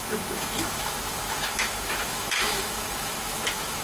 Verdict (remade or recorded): remade